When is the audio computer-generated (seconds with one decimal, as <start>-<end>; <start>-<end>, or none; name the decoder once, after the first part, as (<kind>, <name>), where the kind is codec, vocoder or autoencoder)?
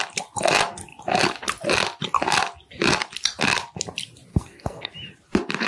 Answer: 4.3-4.9 (codec, SNAC)